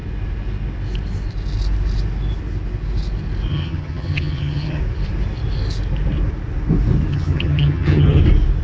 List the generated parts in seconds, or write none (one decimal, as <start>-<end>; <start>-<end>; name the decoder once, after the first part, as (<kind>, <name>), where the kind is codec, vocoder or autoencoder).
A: 3.5-4.8 (vocoder, HiFi-GAN); 7.1-8.2